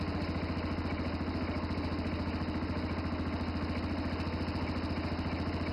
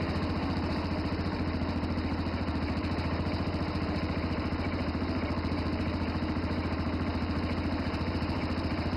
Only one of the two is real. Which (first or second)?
first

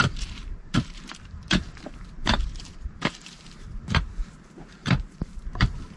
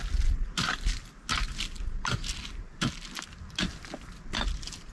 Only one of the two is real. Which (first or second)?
second